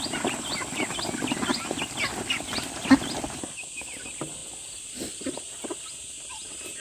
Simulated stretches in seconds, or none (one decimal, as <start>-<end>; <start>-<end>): none